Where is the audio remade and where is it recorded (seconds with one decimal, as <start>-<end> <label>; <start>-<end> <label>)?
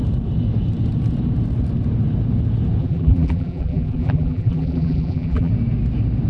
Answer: 0.0-2.8 recorded; 2.8-5.5 remade; 5.5-6.3 recorded